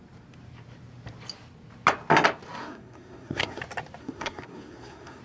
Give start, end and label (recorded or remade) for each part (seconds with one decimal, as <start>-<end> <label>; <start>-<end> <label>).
0.0-2.6 recorded; 2.6-3.6 remade; 3.6-4.0 recorded; 4.0-5.2 remade